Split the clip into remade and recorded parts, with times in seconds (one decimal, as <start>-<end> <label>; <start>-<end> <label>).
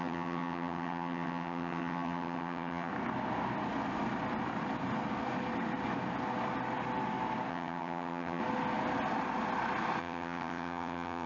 0.0-2.9 remade; 2.9-7.5 recorded; 7.5-8.4 remade; 8.4-10.0 recorded; 10.0-11.3 remade